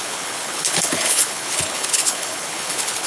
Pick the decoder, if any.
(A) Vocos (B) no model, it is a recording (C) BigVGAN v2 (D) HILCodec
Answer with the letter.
D